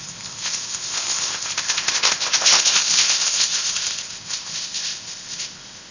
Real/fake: fake